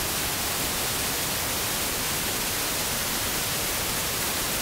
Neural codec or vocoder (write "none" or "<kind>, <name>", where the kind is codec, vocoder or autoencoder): none